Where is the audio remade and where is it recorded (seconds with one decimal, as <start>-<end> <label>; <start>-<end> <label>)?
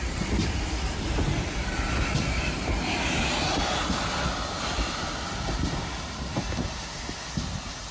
0.0-7.9 recorded